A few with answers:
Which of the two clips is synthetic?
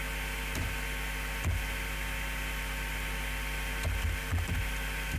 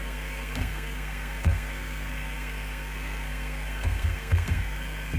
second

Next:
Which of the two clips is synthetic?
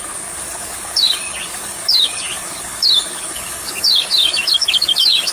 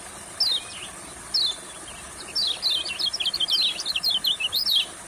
first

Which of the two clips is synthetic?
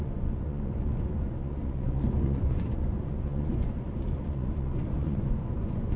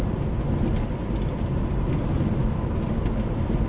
first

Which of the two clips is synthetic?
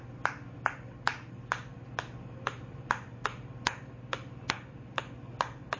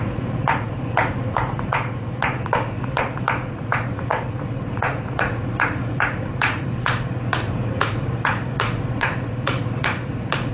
second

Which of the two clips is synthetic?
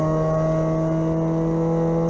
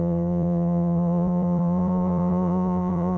second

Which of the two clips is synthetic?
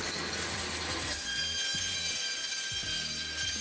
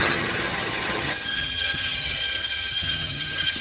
second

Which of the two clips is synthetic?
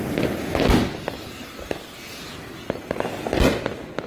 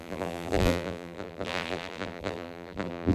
second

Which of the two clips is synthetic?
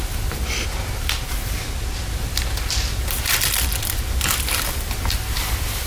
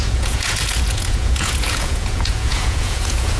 second